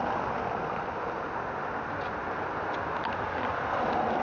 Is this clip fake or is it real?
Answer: real